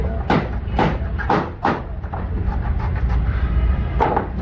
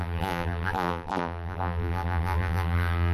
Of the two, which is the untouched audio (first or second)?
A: first